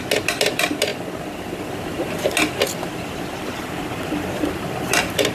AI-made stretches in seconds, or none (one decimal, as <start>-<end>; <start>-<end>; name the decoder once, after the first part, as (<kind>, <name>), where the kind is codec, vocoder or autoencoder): none